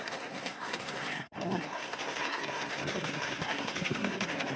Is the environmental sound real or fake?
fake